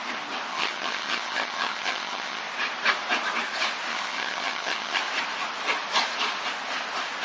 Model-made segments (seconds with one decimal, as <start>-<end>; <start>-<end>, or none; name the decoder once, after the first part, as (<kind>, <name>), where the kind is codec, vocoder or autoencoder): 0.5-2.4 (vocoder, HiFi-GAN); 3.9-5.0